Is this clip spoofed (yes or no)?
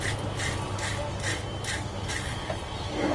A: no